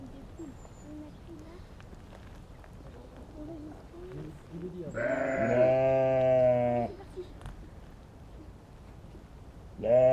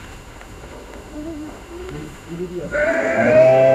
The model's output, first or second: second